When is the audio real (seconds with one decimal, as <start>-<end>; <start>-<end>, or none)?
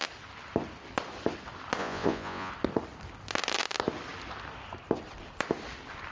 0.0-1.8; 2.5-6.1